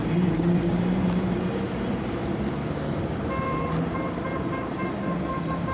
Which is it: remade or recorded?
remade